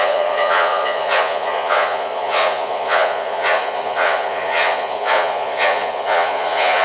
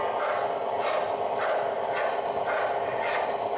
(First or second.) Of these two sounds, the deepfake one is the first